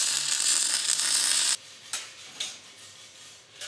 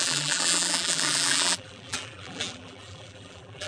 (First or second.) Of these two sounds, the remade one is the second